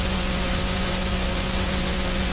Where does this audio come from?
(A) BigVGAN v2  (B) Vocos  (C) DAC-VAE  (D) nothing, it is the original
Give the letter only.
B